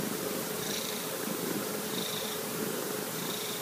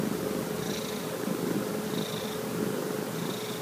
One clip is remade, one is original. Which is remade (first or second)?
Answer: first